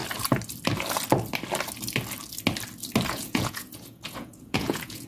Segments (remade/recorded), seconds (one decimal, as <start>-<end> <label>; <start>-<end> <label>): 0.0-3.1 recorded; 3.1-5.1 remade